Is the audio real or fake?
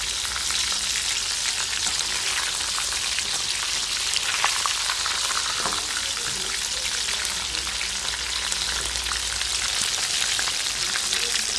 real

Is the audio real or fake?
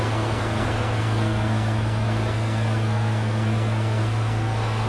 fake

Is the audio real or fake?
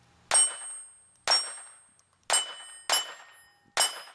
real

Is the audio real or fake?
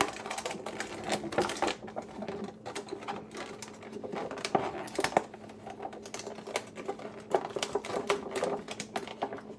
real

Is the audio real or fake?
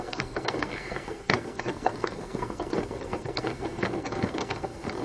fake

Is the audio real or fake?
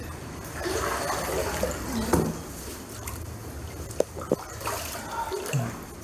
real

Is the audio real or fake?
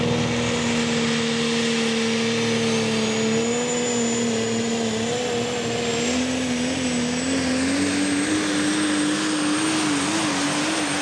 real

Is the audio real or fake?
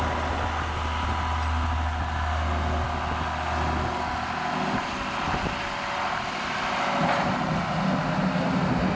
real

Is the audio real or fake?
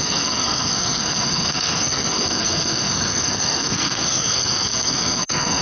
fake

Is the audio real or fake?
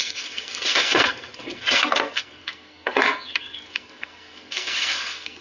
fake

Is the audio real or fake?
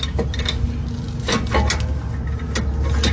real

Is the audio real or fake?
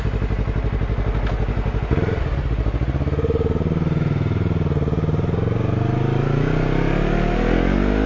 real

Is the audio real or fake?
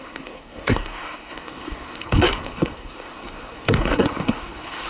fake